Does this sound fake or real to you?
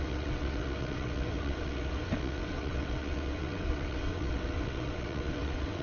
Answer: fake